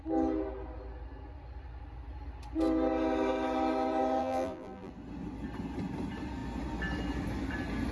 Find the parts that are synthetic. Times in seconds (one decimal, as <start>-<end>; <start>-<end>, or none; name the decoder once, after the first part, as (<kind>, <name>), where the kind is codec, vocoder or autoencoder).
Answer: 4.2-4.9 (vocoder, BigVGAN v2)